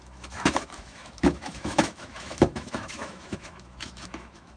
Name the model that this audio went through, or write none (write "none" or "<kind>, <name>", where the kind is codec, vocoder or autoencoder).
autoencoder, DAC-VAE